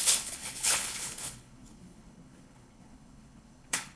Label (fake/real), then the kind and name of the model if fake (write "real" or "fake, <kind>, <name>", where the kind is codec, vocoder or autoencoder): fake, codec, HILCodec